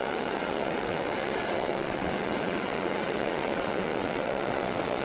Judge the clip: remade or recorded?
remade